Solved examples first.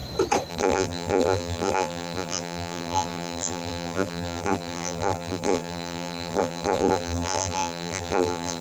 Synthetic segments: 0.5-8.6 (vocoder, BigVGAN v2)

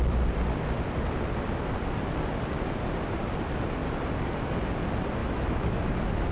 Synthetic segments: 5.2-5.8 (autoencoder, DAC-VAE)

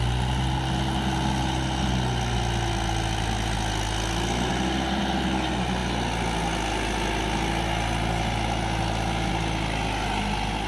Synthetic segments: none

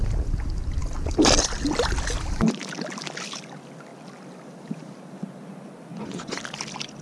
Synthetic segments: 5.9-6.4 (vocoder, Vocos)

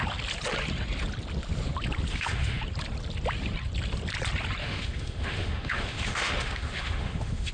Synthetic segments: 2.1-2.6 (autoencoder, DAC-VAE); 4.6-7.5

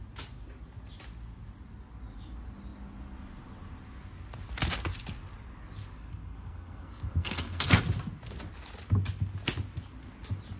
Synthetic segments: 5.8-7.8 (codec, SNAC)

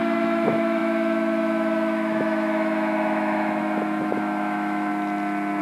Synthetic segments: 0.0-4.9 (autoencoder, DAC-VAE)